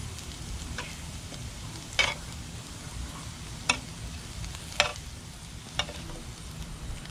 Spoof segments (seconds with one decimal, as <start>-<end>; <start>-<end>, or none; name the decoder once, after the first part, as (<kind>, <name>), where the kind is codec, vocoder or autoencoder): none